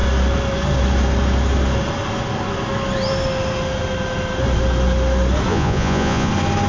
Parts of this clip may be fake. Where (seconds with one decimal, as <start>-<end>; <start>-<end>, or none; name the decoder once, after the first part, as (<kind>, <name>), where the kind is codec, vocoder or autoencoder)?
5.5-6.3 (vocoder, Vocos)